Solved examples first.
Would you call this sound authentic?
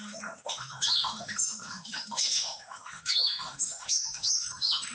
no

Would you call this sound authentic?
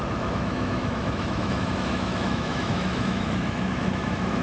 no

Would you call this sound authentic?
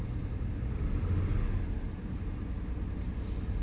yes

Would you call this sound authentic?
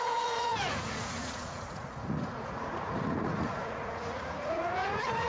no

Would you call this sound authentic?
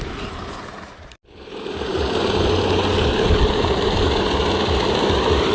yes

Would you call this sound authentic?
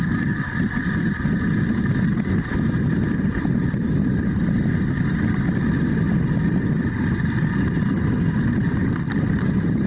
yes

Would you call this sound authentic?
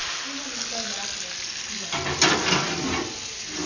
yes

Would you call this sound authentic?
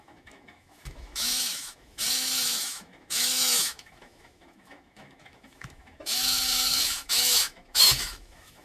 no